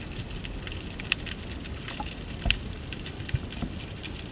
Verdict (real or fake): real